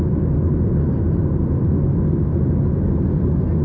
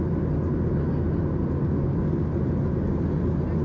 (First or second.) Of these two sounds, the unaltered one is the second